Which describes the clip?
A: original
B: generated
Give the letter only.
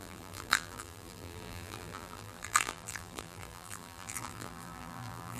B